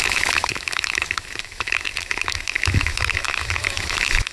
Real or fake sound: fake